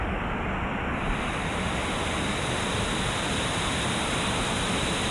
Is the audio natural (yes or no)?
yes